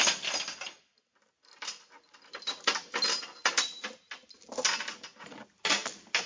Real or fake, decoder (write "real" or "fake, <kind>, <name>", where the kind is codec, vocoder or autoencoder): real